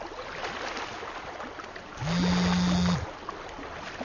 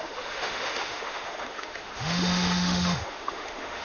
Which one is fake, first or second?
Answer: second